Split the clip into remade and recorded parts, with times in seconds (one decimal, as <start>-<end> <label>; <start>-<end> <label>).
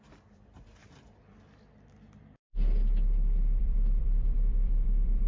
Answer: 0.0-0.8 remade; 0.8-3.6 recorded; 3.6-5.3 remade